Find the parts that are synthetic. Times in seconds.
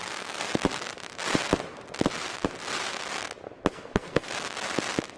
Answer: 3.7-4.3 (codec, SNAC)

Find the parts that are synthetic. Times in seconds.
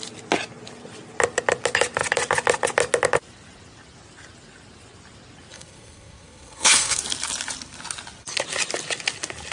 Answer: 5.5-7.0 (codec, SNAC)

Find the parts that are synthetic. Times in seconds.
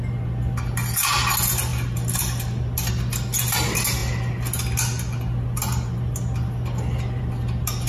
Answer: none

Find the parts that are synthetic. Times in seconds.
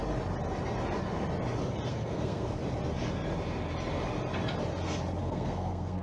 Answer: 1.9-2.6 (codec, SNAC); 5.2-6.0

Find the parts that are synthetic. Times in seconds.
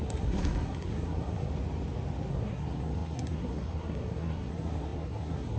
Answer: 0.0-1.5 (codec, SNAC); 2.3-5.6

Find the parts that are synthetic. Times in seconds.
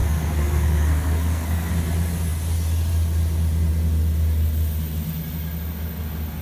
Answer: 0.0-1.7 (codec, SNAC)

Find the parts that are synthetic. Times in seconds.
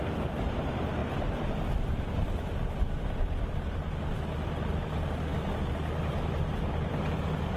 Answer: none